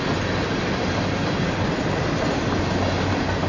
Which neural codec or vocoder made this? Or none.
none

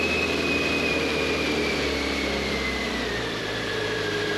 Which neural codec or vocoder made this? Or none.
vocoder, BigVGAN v2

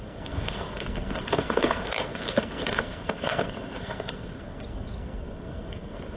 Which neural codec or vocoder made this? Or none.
codec, SNAC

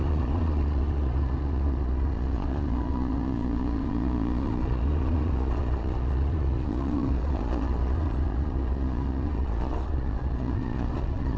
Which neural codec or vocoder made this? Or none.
vocoder, Vocos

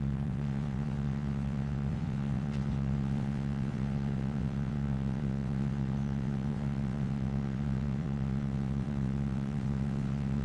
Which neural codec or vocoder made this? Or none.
vocoder, WaveNeXt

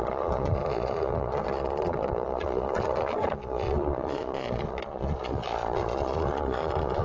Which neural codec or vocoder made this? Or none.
vocoder, Vocos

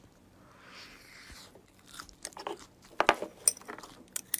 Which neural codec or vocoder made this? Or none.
none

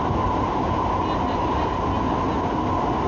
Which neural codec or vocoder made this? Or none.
none